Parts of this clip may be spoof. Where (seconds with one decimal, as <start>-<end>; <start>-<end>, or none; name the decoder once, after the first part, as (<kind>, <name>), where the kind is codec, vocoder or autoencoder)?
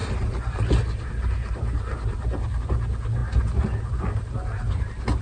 none